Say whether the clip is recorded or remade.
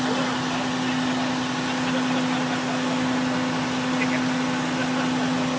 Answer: recorded